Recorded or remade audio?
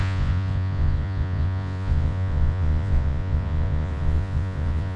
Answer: remade